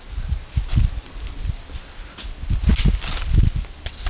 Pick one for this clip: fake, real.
real